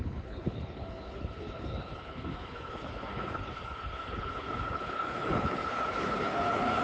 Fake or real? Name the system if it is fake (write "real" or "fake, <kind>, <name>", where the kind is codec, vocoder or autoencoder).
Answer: fake, codec, HILCodec